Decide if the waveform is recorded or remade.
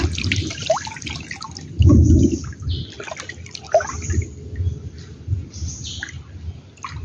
recorded